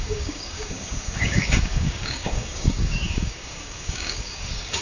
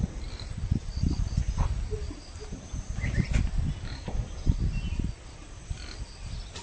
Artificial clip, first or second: first